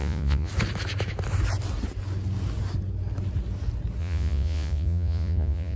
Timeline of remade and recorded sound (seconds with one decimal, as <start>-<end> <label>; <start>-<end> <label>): 0.0-0.5 remade; 0.5-4.0 recorded; 4.0-5.8 remade